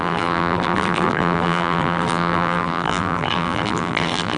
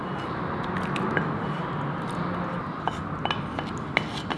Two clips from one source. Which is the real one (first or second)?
second